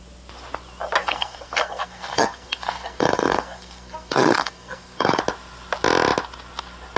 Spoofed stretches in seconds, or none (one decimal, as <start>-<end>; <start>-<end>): 1.0-5.2